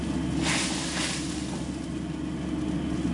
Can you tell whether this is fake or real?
real